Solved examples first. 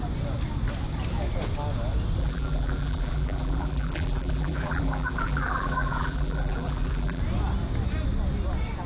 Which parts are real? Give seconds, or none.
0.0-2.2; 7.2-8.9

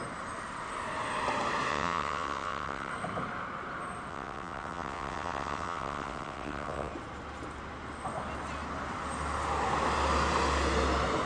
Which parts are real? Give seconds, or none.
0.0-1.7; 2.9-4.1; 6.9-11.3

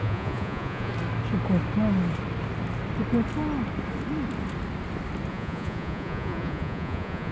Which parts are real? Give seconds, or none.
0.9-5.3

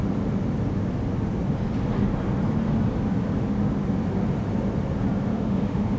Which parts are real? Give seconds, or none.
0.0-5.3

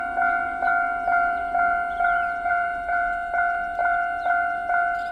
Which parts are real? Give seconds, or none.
none

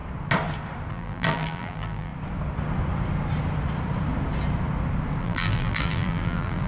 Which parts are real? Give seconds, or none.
0.0-0.9; 2.1-5.2

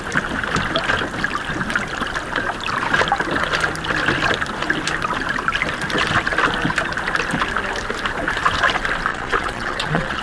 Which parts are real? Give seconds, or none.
0.0-9.1